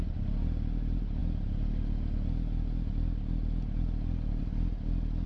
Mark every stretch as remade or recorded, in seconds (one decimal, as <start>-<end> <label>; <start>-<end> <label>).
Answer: 0.0-5.3 recorded